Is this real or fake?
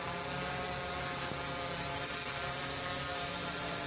real